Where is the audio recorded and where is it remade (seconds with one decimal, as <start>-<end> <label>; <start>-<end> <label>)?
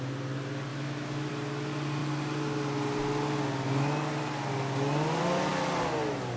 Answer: 0.0-0.7 recorded; 0.7-1.3 remade; 1.3-6.4 recorded